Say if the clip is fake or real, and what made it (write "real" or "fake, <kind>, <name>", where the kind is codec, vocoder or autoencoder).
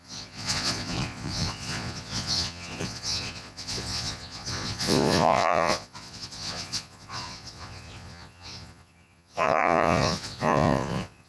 fake, vocoder, Vocos